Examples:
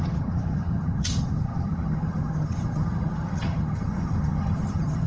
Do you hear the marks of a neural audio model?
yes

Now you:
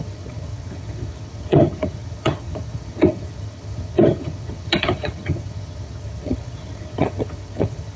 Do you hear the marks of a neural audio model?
yes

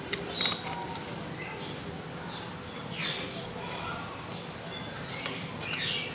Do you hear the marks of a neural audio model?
no